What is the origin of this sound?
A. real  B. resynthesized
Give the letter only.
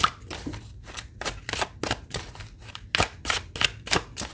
A